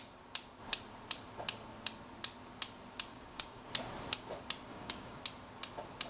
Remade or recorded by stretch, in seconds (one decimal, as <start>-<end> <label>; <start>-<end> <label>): 0.0-3.1 recorded; 3.1-3.6 remade; 3.6-4.7 recorded; 4.7-5.2 remade; 5.2-6.1 recorded